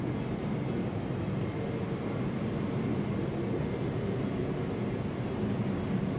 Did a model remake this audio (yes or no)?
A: no